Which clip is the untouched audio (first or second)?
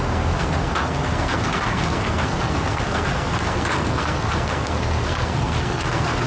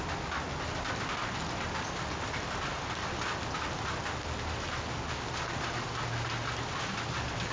second